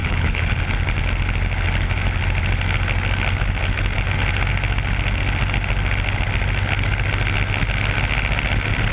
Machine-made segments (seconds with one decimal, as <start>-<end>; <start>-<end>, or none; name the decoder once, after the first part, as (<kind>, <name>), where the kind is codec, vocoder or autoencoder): 0.0-0.5 (codec, HILCodec)

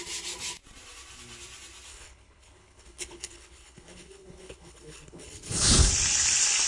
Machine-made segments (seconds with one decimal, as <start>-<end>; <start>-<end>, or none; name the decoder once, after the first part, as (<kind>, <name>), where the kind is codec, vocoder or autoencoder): 1.9-5.9 (codec, HILCodec)

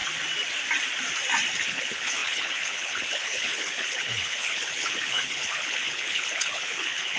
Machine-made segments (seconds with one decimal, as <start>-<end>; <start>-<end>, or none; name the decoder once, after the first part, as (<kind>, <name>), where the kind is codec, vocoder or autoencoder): 1.7-7.2 (codec, HILCodec)

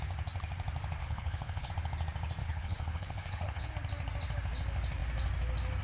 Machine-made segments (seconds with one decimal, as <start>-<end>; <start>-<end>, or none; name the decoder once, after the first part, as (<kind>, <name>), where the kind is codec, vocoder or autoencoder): 1.0-1.7 (codec, HILCodec); 2.4-3.7